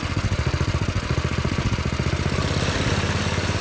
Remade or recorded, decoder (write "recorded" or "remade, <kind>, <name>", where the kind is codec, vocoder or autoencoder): recorded